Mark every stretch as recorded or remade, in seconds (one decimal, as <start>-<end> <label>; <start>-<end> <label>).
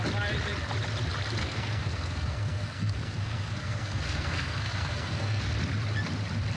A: 0.0-1.4 recorded; 1.4-5.4 remade; 5.4-6.6 recorded